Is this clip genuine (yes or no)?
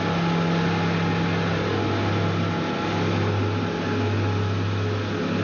yes